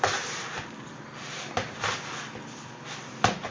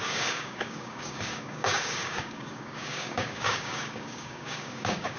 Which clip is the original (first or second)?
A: first